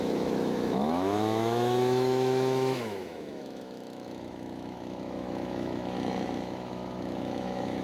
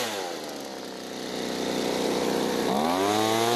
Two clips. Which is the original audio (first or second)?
second